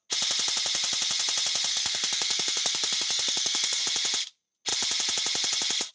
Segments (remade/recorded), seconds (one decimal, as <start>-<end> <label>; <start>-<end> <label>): 0.0-1.7 recorded; 1.7-3.8 remade; 3.8-5.9 recorded